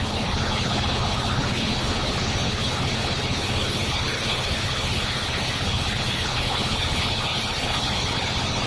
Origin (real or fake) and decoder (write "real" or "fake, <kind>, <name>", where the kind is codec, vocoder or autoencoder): fake, codec, HILCodec